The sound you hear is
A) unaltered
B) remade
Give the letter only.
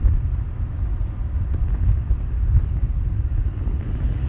A